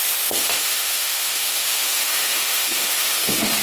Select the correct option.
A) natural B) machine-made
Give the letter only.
B